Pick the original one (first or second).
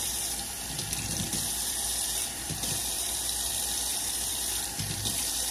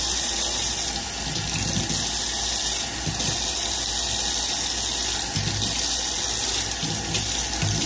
second